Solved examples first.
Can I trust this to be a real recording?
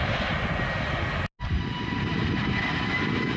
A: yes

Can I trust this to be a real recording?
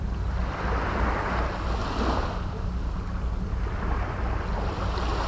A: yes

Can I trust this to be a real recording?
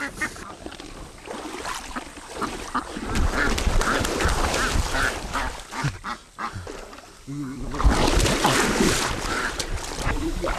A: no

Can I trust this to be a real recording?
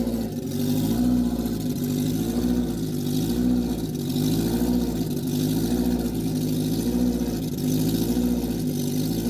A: yes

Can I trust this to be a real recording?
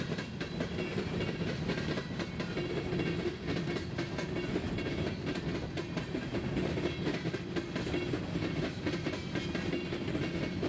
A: yes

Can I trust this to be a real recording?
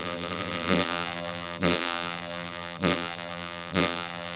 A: no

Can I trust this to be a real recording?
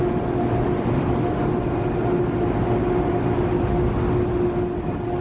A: yes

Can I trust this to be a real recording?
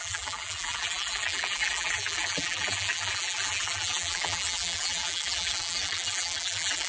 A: no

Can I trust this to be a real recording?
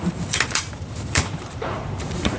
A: no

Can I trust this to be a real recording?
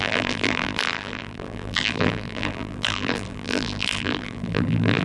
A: no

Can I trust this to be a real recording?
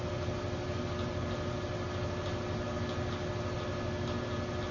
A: yes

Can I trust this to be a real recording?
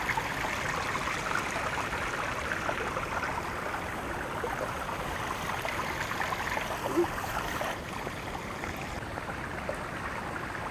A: yes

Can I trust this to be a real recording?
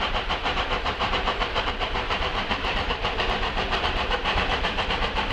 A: no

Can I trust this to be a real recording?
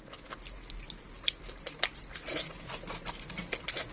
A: yes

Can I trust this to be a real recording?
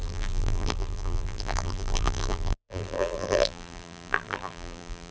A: no